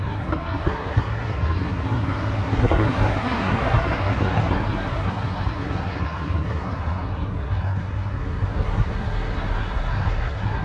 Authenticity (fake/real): fake